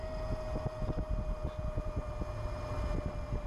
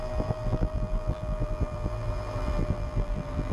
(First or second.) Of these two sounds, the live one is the first